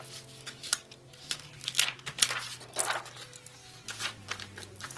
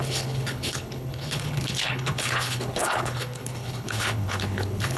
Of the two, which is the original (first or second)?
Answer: first